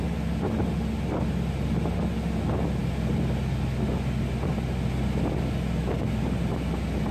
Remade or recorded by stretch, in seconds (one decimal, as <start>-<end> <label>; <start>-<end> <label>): 0.0-7.1 recorded